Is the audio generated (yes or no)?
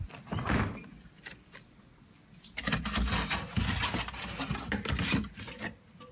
no